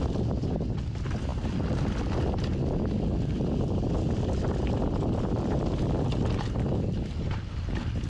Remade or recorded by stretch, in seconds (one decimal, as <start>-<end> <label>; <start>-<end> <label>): 0.0-8.1 recorded